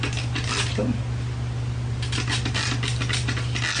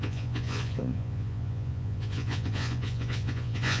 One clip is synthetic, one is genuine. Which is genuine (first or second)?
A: first